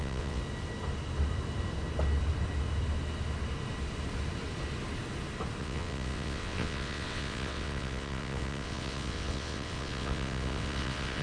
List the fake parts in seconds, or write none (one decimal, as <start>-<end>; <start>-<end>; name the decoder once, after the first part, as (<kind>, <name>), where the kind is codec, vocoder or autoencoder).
0.0-0.4 (vocoder, WaveNeXt); 5.6-11.2